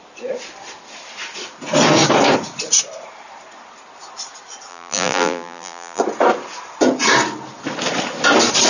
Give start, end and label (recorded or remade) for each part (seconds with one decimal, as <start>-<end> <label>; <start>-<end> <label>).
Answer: 0.0-4.7 recorded; 4.7-6.0 remade; 6.0-8.7 recorded